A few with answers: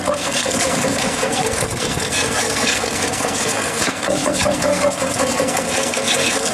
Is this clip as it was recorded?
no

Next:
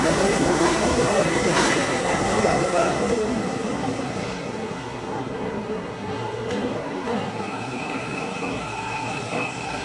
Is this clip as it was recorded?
no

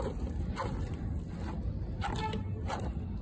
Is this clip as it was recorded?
yes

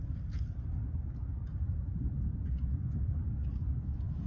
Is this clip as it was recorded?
yes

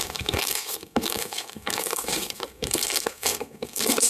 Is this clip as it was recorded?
no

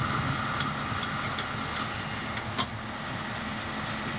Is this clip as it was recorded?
yes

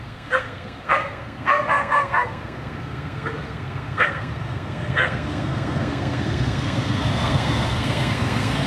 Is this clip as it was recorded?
no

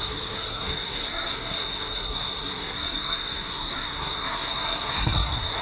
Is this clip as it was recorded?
no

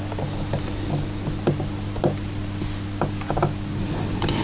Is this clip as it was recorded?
yes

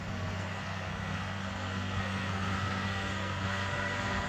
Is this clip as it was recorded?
no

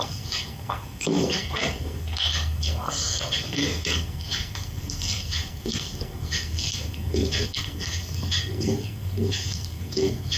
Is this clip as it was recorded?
no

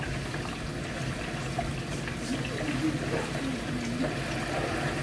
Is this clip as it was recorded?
yes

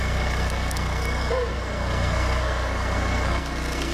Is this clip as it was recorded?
no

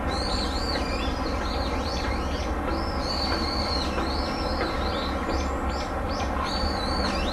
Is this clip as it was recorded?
yes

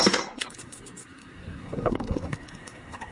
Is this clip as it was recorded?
no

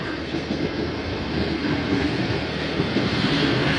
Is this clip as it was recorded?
no